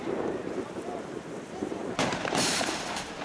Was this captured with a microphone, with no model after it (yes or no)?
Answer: no